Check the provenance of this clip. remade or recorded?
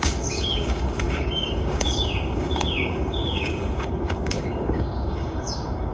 remade